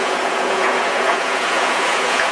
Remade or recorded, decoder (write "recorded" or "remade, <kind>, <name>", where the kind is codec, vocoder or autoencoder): remade, vocoder, Vocos